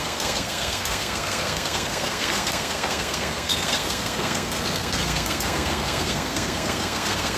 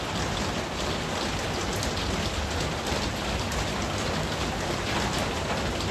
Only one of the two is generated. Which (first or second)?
first